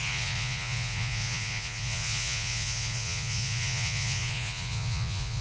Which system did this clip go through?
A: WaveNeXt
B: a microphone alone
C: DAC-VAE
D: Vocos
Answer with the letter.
D